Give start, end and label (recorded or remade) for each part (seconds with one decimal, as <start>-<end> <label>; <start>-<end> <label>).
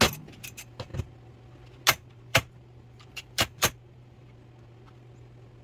0.0-2.3 recorded; 2.3-4.3 remade; 4.3-5.6 recorded